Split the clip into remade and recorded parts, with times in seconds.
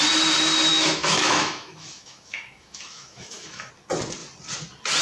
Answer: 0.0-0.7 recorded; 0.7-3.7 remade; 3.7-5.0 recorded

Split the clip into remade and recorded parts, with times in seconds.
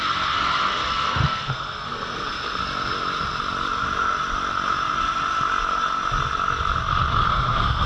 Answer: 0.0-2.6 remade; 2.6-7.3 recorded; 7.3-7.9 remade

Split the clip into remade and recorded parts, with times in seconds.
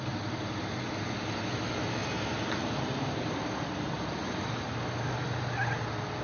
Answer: 0.0-6.2 recorded